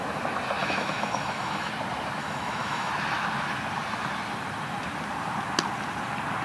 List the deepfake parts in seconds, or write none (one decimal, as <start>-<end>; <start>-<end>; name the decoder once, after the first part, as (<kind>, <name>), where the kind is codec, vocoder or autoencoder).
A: 0.6-1.7 (autoencoder, DAC-VAE); 2.2-2.9